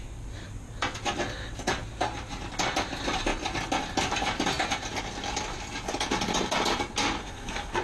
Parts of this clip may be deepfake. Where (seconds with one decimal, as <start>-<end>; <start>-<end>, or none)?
7.2-7.8

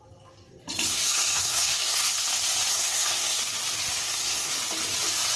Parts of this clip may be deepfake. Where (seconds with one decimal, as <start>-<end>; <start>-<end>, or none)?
0.9-2.1; 2.7-3.4; 4.0-4.5